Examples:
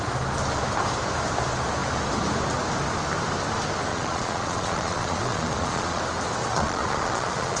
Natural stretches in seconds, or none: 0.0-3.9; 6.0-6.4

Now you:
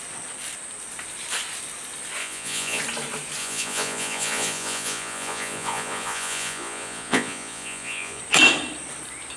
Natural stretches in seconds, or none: 0.0-2.2; 2.8-3.4; 8.2-9.4